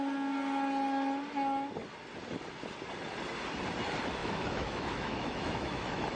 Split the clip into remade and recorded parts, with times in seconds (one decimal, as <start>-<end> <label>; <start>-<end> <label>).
0.0-4.2 recorded; 4.2-6.2 remade